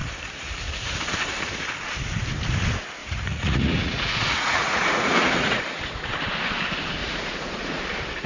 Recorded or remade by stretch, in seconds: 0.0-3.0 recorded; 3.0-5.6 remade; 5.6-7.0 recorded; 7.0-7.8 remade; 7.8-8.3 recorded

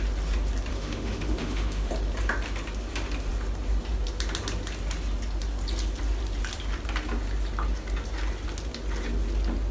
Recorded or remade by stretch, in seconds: 0.0-0.7 recorded; 0.7-1.9 remade; 1.9-9.7 recorded

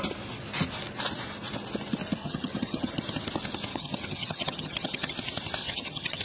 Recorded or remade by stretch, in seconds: 0.0-2.2 recorded; 2.2-2.9 remade; 2.9-3.7 recorded; 3.7-5.1 remade; 5.1-5.6 recorded; 5.6-6.2 remade

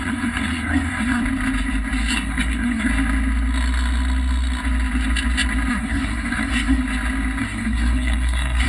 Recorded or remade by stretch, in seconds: 0.0-1.2 remade; 1.2-2.1 recorded; 2.1-2.9 remade; 2.9-5.7 recorded; 5.7-6.8 remade; 6.8-7.4 recorded; 7.4-8.7 remade

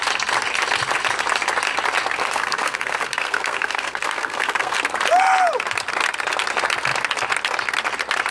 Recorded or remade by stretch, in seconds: 0.0-2.2 recorded; 2.2-4.8 remade; 4.8-8.3 recorded